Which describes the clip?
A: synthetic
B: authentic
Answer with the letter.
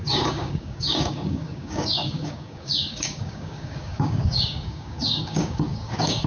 A